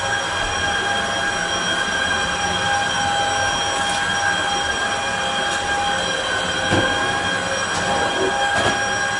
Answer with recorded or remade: recorded